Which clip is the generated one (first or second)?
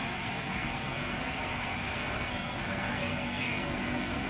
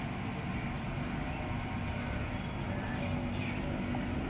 first